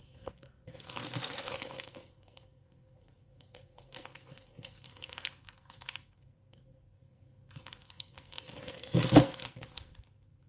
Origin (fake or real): fake